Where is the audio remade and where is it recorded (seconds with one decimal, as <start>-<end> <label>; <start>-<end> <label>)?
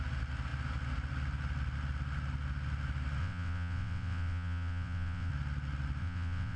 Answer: 0.0-3.2 recorded; 3.2-5.3 remade; 5.3-6.0 recorded; 6.0-6.6 remade